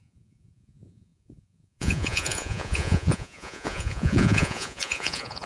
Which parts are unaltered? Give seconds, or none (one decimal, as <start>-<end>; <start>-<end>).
none